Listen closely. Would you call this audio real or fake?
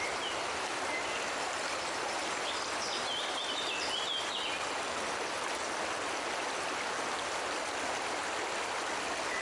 real